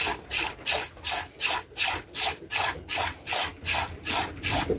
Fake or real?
real